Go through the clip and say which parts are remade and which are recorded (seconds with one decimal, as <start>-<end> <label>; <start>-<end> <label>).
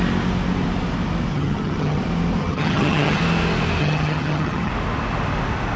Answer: 0.0-1.3 recorded; 1.3-2.0 remade; 2.0-2.4 recorded; 2.4-3.2 remade; 3.2-3.8 recorded; 3.8-4.7 remade; 4.7-5.8 recorded